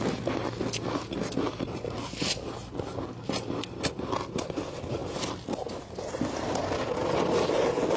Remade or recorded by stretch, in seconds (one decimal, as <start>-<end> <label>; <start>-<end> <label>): 0.0-8.0 recorded